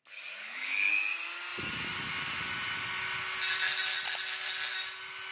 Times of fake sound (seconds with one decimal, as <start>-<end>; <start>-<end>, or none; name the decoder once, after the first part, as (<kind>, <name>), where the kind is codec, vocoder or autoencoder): 0.4-0.9 (codec, HILCodec)